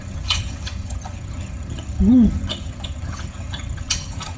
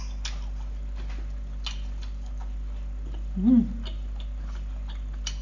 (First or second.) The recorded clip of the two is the second